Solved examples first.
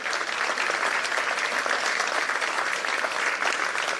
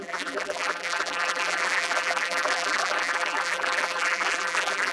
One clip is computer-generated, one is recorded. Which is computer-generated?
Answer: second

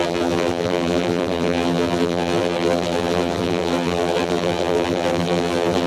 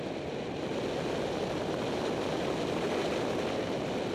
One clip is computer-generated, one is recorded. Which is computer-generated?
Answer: first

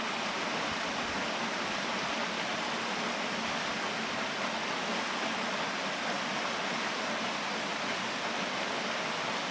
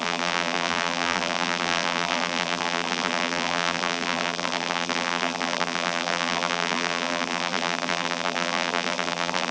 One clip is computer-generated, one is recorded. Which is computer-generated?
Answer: second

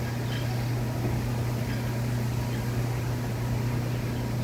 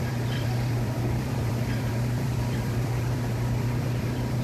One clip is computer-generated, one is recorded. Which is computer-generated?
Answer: second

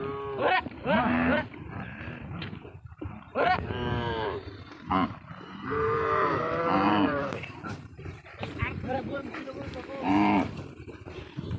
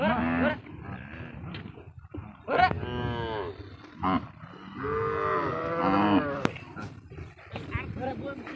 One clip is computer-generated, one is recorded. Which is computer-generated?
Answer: first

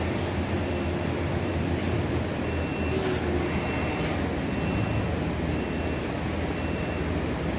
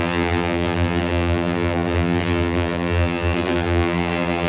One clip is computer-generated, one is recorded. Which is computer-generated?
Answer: second